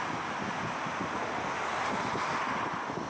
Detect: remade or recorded recorded